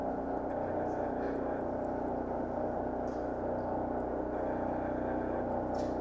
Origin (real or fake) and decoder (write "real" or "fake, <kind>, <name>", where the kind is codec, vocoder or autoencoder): real